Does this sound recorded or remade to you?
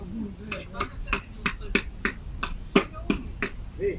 recorded